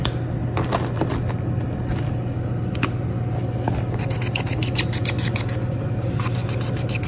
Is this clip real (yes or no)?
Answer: yes